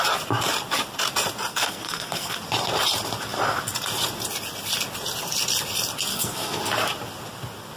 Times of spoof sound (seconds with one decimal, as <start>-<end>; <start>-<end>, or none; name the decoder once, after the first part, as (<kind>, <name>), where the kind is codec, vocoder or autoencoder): 1.5-2.4 (codec, SNAC); 6.1-6.6